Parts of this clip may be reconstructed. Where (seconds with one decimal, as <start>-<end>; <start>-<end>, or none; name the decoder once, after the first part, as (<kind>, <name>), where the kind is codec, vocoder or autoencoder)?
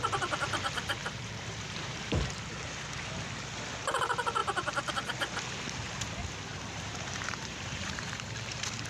1.0-2.4 (vocoder, BigVGAN v2); 4.4-4.9; 6.5-8.5